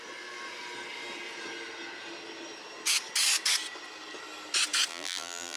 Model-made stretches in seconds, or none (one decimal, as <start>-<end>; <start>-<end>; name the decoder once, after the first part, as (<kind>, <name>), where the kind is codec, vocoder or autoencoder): 4.9-5.6 (vocoder, BigVGAN v2)